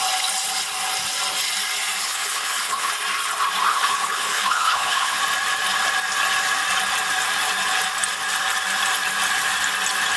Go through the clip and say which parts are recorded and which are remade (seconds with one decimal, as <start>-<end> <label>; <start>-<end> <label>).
0.0-2.0 recorded; 2.0-2.9 remade; 2.9-3.7 recorded; 3.7-5.2 remade; 5.2-10.2 recorded